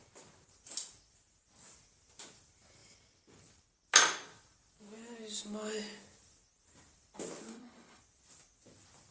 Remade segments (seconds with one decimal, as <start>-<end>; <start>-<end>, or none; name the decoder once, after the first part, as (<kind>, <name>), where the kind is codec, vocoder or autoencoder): 7.5-8.0 (codec, HILCodec)

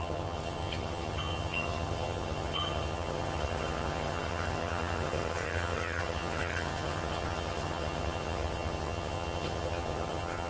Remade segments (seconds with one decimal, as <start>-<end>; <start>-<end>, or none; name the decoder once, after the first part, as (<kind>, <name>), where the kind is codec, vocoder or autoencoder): 0.0-10.5 (vocoder, HiFi-GAN)

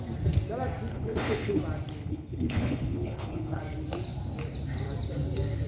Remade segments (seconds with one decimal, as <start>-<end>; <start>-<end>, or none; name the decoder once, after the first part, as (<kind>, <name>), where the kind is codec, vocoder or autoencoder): 0.9-1.6 (codec, HILCodec); 2.0-3.6

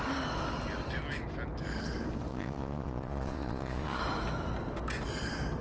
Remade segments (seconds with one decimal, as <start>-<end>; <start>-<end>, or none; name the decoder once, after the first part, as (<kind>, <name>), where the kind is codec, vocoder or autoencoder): 2.3-4.0 (vocoder, Vocos)

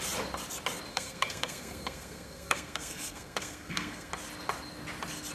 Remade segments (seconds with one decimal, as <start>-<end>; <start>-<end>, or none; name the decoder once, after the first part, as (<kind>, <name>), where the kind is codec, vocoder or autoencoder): 0.9-4.1 (codec, SNAC)

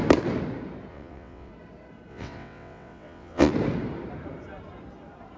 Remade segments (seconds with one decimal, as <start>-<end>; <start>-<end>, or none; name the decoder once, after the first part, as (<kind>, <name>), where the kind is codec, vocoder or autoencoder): 0.9-1.5 (vocoder, WaveNeXt); 2.1-3.5

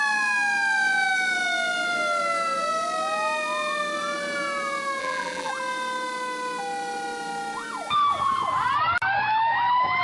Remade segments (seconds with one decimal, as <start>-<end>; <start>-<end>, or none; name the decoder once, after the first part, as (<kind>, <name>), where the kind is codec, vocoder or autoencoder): 5.0-5.5 (vocoder, BigVGAN v2)